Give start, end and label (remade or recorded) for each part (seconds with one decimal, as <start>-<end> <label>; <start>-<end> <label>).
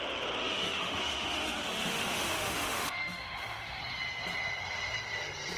0.0-0.4 recorded; 0.4-3.8 remade; 3.8-5.6 recorded